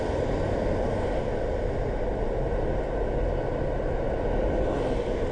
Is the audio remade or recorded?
recorded